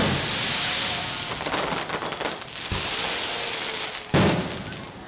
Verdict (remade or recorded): recorded